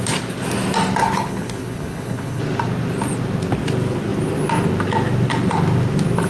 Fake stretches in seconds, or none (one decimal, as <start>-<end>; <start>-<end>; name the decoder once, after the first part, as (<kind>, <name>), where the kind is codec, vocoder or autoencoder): 1.0-2.4 (codec, HILCodec)